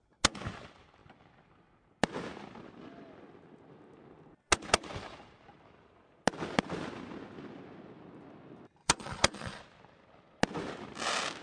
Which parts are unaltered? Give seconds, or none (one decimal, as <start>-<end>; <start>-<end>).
0.0-8.8; 9.6-11.4